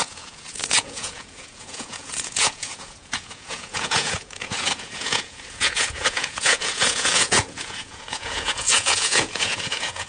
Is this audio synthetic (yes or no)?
yes